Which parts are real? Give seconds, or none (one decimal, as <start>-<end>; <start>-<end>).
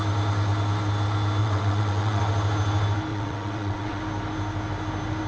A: 0.0-1.4; 2.2-3.1; 4.0-5.3